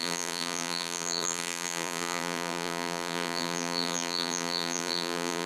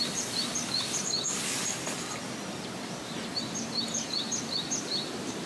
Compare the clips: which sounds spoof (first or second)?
first